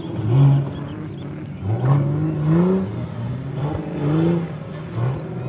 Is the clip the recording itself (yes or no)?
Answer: yes